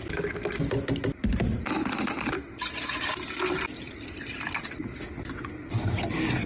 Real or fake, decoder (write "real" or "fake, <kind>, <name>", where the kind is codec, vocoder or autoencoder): real